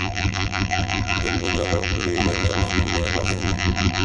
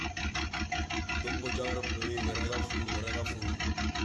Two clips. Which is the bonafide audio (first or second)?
second